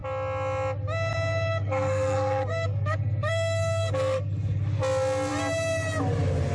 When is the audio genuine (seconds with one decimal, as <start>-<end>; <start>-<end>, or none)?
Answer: 0.0-1.5; 4.6-6.5